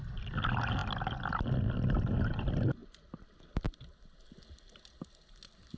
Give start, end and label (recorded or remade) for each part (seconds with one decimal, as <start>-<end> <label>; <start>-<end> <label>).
0.0-5.8 recorded